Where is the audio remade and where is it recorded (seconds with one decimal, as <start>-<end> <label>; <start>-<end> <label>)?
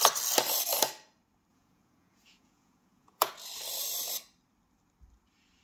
0.0-1.5 recorded; 1.5-3.3 remade; 3.3-5.6 recorded